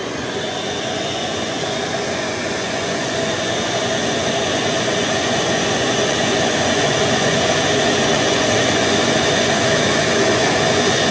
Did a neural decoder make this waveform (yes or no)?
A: yes